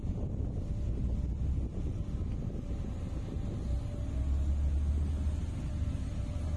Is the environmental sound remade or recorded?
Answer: recorded